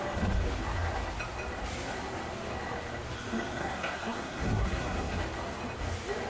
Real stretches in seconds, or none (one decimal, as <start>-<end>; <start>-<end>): 0.0-3.6; 5.2-6.3